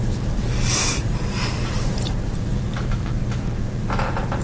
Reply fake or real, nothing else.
fake